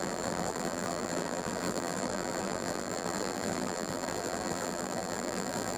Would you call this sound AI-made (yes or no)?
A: yes